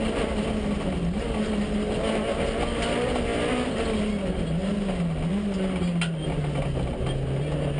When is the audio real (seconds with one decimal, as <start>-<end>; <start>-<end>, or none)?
0.0-7.8